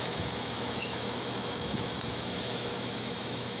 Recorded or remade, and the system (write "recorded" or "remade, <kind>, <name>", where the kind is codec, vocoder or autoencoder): remade, autoencoder, DAC-VAE